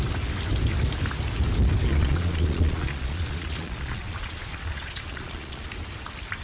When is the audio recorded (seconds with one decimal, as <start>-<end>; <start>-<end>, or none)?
0.0-1.9; 5.7-6.4

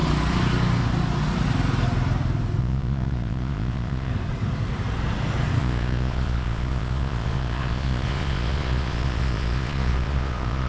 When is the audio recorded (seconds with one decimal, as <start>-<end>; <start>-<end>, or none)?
0.0-2.6; 4.1-5.6